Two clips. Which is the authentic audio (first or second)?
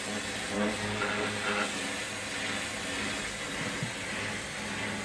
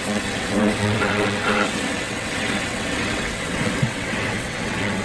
first